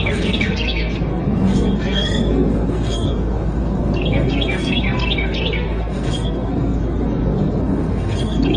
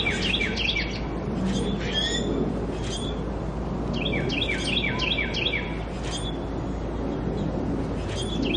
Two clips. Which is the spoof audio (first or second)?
first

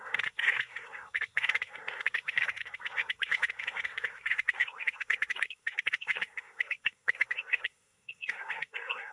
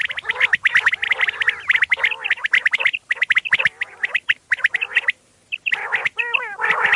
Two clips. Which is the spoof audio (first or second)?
first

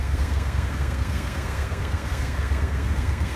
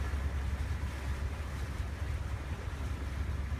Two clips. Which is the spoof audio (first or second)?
first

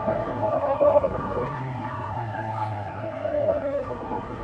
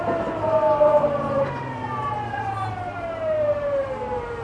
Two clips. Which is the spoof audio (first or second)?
first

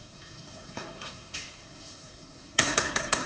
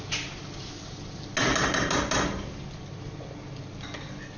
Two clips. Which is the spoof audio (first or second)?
first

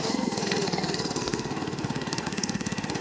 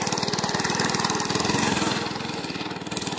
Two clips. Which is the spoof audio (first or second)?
first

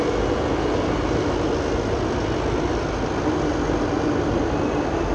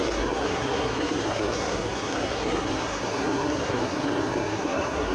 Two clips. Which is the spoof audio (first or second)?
second